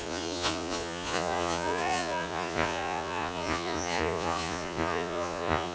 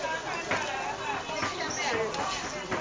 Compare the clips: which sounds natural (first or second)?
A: second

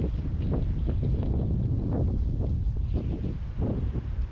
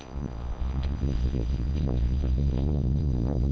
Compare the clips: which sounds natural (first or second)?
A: first